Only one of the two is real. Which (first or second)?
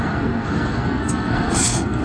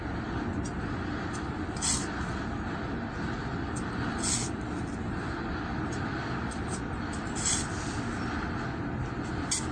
second